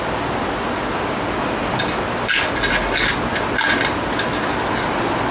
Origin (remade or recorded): recorded